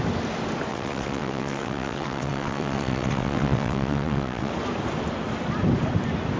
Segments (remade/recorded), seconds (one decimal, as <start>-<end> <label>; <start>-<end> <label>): 0.0-0.7 recorded; 0.7-4.5 remade; 4.5-6.4 recorded